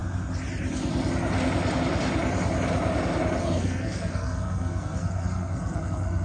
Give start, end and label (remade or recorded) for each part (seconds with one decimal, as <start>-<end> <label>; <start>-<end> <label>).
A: 0.0-3.4 recorded; 3.4-6.2 remade